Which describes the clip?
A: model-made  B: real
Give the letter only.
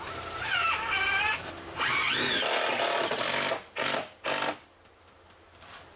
B